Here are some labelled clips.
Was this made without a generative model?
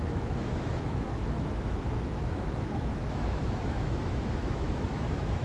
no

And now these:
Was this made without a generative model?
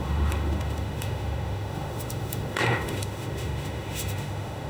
no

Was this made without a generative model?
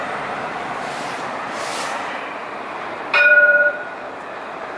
no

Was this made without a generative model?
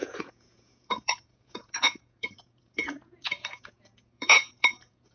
no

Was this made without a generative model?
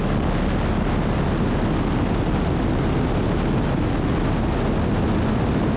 yes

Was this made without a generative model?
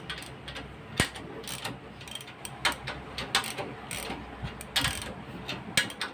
yes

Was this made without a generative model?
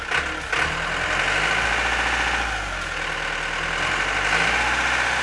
yes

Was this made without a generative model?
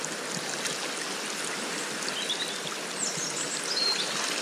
yes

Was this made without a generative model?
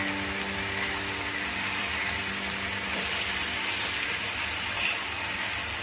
yes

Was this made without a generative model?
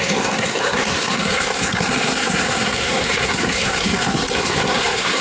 no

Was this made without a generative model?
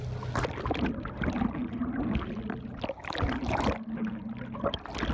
yes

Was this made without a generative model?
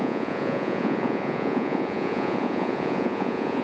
no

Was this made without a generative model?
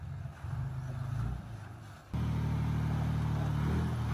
yes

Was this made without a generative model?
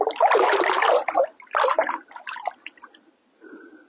yes